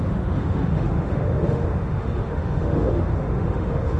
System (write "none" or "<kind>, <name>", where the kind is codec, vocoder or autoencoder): autoencoder, DAC-VAE